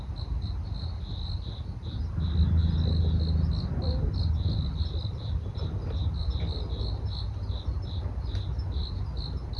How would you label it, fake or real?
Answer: real